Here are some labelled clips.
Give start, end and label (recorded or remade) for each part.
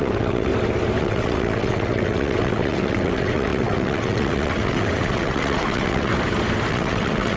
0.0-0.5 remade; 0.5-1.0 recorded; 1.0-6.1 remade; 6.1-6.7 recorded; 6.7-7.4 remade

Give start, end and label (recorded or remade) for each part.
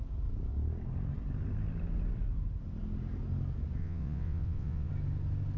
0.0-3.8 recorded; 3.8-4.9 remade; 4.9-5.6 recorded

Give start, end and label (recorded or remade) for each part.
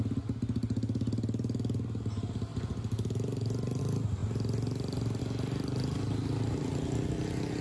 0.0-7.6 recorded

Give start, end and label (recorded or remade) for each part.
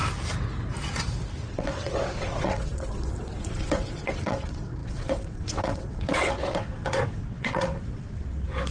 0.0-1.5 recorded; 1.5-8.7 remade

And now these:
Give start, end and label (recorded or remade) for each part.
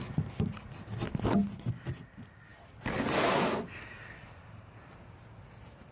0.0-5.9 recorded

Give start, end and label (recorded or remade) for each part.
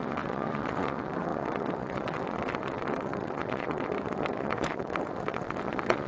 0.0-6.1 remade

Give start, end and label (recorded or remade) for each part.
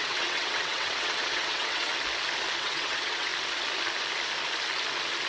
0.0-1.9 remade; 1.9-2.6 recorded; 2.6-3.3 remade; 3.3-5.3 recorded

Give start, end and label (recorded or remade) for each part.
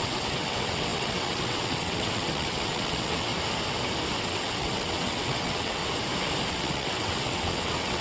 0.0-3.3 remade; 3.3-4.2 recorded; 4.2-5.8 remade; 5.8-6.5 recorded; 6.5-8.0 remade